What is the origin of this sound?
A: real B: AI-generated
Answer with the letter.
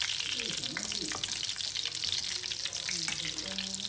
A